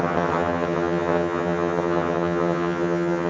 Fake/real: fake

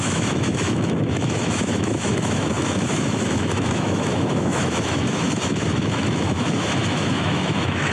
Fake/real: fake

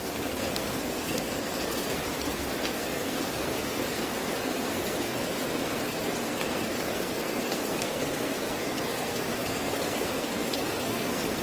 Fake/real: fake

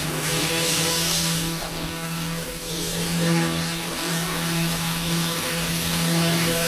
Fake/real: fake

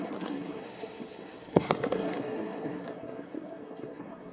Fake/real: fake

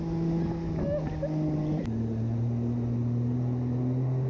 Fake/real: real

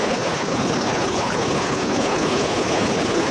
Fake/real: fake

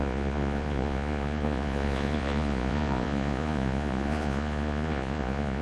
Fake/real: fake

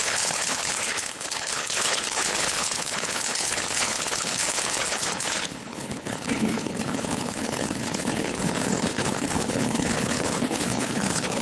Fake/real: fake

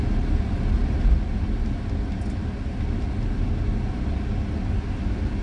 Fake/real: real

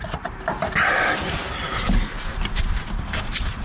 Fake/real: real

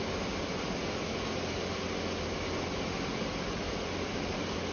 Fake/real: real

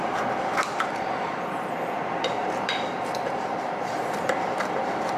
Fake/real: fake